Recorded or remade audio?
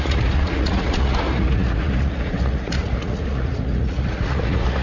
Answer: remade